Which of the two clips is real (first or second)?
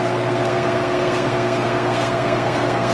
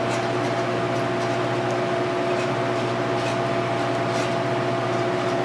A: second